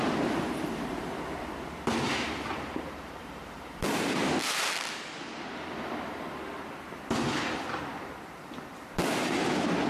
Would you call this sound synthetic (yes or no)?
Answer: yes